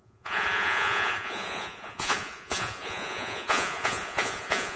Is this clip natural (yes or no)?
no